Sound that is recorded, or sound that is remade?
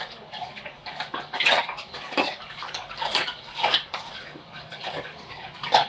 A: remade